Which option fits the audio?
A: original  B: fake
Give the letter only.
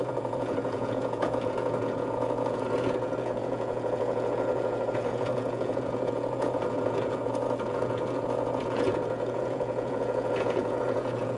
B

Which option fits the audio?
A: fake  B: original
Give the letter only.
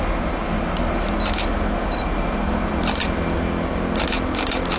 B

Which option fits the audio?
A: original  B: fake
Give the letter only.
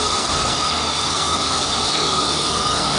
B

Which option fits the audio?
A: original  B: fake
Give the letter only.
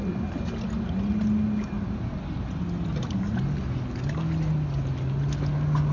A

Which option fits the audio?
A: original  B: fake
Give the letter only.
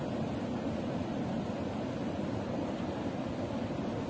A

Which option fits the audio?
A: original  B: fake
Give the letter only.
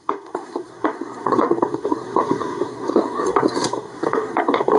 B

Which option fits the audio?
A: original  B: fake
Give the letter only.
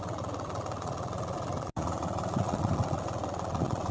B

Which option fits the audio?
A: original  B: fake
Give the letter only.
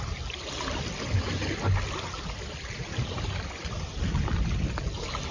A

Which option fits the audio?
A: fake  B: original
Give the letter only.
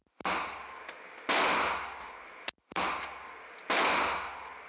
B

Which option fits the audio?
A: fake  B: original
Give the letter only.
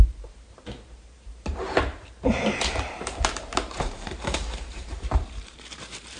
A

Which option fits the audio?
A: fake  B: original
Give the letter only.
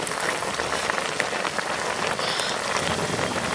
A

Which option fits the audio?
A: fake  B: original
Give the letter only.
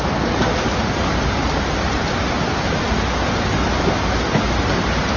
B